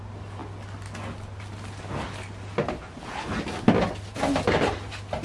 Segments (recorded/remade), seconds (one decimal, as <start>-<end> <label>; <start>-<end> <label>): 0.0-5.2 recorded